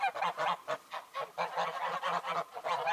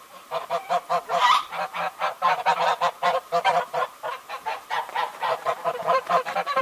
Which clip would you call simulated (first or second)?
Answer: second